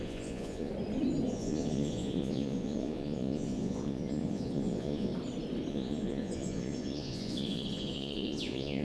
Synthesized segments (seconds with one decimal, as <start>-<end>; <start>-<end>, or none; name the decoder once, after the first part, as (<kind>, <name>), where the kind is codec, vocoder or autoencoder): 0.0-0.7 (vocoder, Vocos); 1.3-5.1; 5.7-8.8